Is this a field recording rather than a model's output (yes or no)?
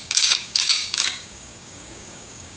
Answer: no